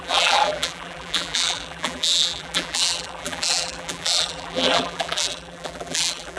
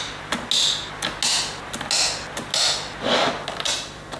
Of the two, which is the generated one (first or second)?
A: first